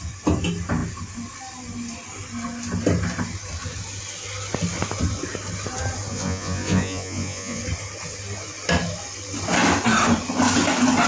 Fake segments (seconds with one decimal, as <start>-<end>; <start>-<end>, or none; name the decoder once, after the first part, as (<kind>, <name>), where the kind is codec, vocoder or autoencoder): 6.1-7.6 (vocoder, Vocos)